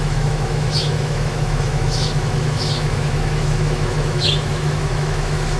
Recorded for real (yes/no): no